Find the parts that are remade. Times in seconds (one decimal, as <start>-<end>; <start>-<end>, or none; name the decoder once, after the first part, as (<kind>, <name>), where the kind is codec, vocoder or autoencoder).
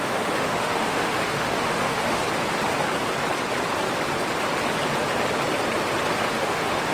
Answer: 0.0-2.2 (autoencoder, DAC-VAE); 6.3-6.9